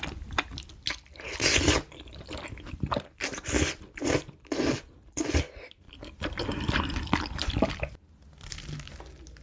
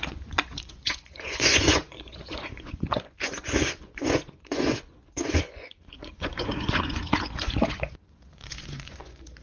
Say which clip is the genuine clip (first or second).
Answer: first